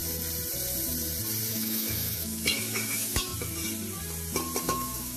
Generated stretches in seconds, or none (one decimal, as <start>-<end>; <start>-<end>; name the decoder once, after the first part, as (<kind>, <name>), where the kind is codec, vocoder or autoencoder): 1.5-3.3 (autoencoder, DAC-VAE); 4.6-5.2